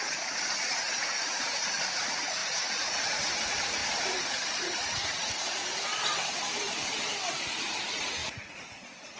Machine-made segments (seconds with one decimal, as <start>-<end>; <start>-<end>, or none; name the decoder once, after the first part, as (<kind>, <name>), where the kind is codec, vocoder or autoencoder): 0.0-3.8 (vocoder, Vocos); 4.6-5.6; 7.3-9.2